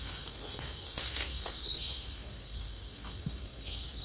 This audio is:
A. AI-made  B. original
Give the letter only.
A